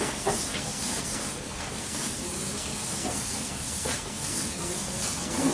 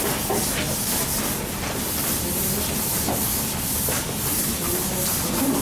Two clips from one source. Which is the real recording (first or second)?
second